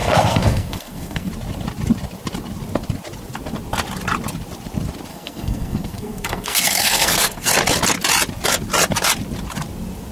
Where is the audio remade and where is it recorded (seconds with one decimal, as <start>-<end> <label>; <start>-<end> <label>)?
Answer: 0.0-1.3 remade; 1.3-5.1 recorded; 5.1-7.5 remade; 7.5-10.1 recorded